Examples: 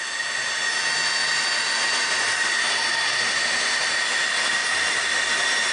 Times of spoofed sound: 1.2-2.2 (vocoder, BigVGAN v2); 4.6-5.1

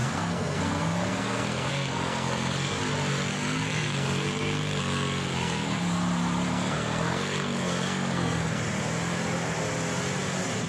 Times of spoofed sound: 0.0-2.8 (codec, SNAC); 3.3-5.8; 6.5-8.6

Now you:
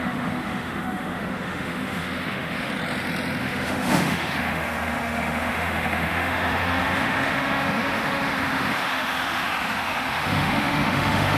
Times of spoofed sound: 0.0-2.7 (autoencoder, DAC-VAE); 3.4-11.4